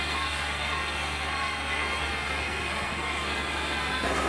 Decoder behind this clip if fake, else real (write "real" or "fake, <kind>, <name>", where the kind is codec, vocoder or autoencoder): fake, codec, SNAC